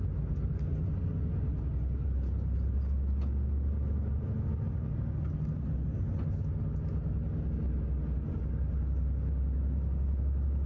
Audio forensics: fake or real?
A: real